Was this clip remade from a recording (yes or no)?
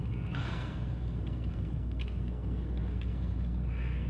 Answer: yes